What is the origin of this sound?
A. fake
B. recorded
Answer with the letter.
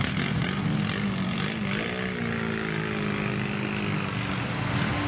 B